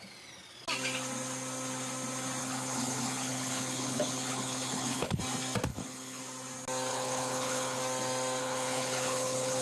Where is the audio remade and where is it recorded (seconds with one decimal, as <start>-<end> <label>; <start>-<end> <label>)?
0.0-2.4 recorded; 2.4-5.2 remade; 5.2-5.7 recorded; 5.7-6.2 remade; 6.2-6.9 recorded; 6.9-7.8 remade; 7.8-8.4 recorded; 8.4-9.6 remade